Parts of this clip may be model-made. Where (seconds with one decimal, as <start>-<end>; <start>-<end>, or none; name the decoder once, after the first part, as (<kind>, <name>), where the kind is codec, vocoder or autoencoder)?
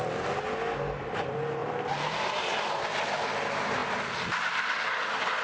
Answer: none